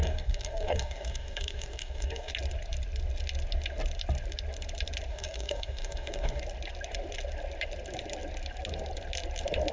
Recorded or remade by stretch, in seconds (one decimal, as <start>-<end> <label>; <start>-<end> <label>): 0.0-2.3 remade; 2.3-5.1 recorded; 5.1-6.4 remade; 6.4-9.7 recorded